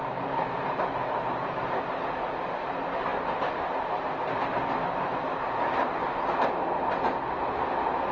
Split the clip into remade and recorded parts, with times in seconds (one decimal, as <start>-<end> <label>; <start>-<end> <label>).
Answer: 0.0-8.1 recorded